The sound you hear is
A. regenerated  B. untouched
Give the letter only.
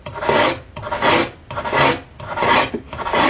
B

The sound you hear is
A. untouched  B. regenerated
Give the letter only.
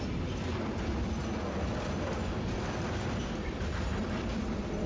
A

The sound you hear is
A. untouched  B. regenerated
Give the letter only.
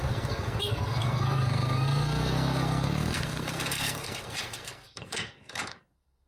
B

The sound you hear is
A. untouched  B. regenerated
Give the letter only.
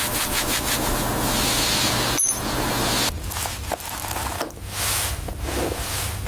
A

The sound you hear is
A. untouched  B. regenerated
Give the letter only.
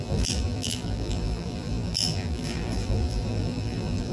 B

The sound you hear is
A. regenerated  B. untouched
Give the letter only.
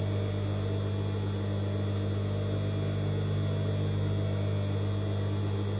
B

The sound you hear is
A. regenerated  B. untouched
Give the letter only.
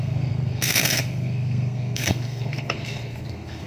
A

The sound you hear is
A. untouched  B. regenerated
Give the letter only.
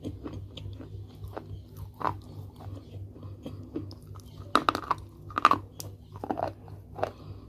A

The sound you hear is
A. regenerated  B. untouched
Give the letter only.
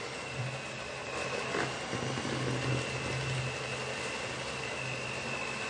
B